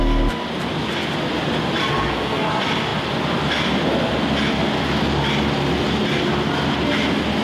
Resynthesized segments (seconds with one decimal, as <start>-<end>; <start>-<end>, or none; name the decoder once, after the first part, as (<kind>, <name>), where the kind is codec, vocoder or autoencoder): 1.9-2.5 (codec, SNAC)